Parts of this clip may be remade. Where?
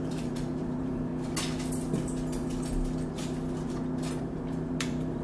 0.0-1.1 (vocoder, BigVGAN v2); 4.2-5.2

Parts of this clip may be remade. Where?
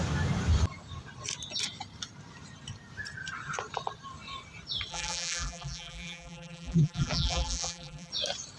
4.9-8.1 (vocoder, BigVGAN v2)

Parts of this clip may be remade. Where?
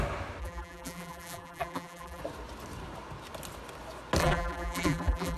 0.4-2.2 (vocoder, BigVGAN v2); 4.2-5.4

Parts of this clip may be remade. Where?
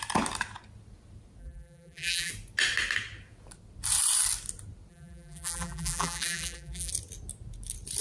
1.4-2.3 (vocoder, BigVGAN v2); 4.9-6.9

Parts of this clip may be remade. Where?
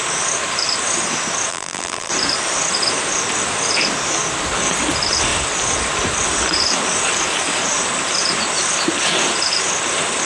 1.5-2.1 (vocoder, BigVGAN v2)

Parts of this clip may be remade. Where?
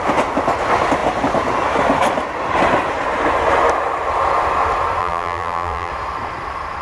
5.0-5.9 (vocoder, BigVGAN v2)